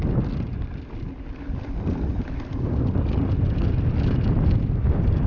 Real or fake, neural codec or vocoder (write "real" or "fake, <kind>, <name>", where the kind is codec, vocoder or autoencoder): real